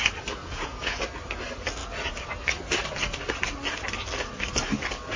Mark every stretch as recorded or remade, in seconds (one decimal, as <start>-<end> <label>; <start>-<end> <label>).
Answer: 0.0-0.4 recorded; 0.4-1.0 remade; 1.0-5.2 recorded